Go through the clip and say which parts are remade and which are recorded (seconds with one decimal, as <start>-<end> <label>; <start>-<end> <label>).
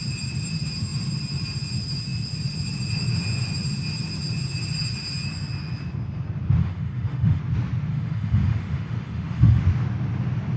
0.0-6.6 recorded; 6.6-7.4 remade; 7.4-7.9 recorded; 7.9-9.6 remade; 9.6-10.6 recorded